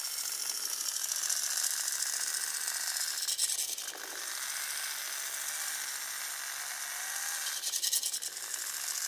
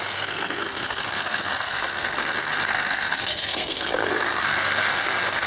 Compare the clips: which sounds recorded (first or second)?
first